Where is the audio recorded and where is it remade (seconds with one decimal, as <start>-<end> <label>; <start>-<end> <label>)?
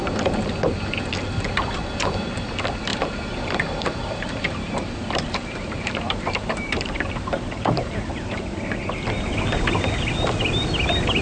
0.0-2.9 recorded; 2.9-8.1 remade; 8.1-11.2 recorded